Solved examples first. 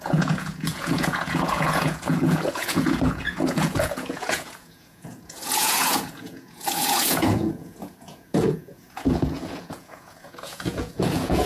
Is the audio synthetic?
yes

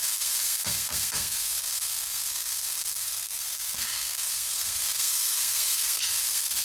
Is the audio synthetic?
yes